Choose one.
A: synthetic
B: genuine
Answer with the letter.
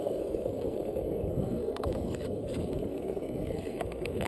A